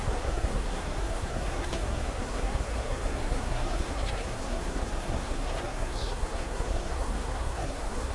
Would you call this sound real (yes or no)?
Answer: no